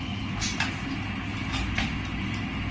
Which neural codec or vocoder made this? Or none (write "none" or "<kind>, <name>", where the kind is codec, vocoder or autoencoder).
none